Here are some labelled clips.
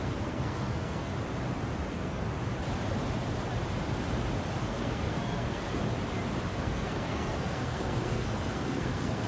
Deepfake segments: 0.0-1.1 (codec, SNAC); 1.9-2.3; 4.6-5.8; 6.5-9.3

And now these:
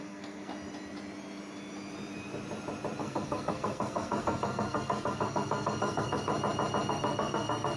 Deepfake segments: 0.0-0.5 (codec, SNAC); 3.0-6.3; 6.9-7.8

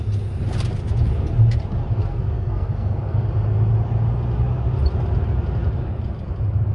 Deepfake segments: 2.0-3.2 (codec, SNAC)

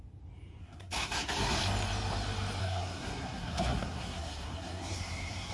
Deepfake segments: 0.6-1.5 (codec, SNAC); 2.6-5.5